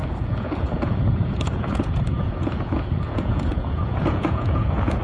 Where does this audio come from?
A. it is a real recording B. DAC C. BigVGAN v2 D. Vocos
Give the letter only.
D